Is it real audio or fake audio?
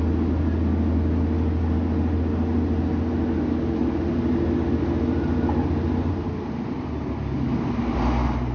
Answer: real